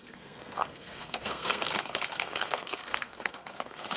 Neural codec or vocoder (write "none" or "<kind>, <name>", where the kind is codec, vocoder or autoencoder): codec, SNAC